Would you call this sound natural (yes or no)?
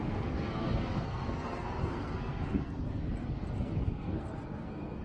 no